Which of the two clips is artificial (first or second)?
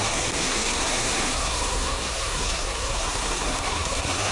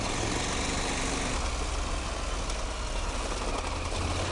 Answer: first